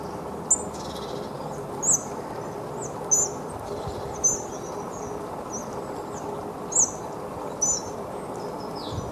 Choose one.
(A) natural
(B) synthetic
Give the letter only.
A